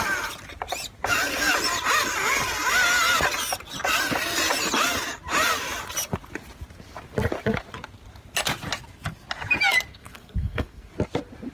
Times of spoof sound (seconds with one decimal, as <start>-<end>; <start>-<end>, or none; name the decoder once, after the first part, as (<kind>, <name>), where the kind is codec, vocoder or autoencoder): 9.9-10.9 (codec, SNAC)